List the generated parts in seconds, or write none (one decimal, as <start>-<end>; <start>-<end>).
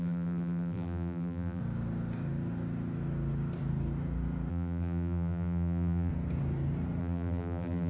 0.0-1.6; 4.5-6.1; 7.0-7.9